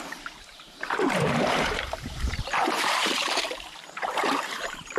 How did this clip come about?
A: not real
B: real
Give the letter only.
A